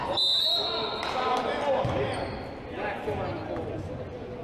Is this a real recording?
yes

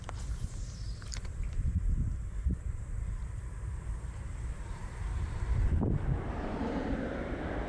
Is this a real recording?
no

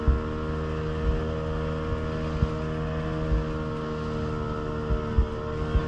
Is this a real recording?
yes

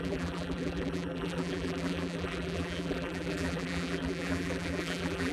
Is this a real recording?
no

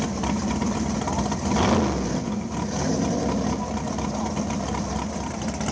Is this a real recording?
yes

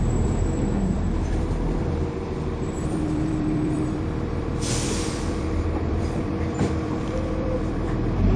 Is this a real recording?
no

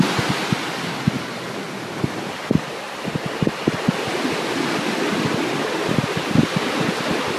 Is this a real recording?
yes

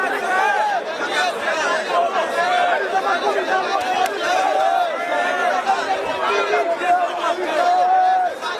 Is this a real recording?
no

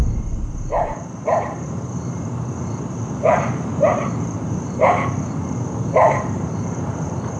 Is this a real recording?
no